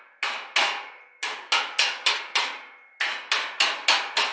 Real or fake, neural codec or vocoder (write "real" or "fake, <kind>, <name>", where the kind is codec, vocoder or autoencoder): real